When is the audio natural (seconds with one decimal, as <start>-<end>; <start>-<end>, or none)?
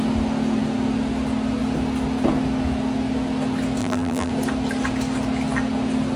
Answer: 0.0-3.8; 4.3-6.2